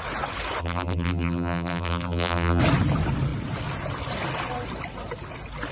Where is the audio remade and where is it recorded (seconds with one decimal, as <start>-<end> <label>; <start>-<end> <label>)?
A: 0.0-0.6 recorded; 0.6-2.6 remade; 2.6-5.7 recorded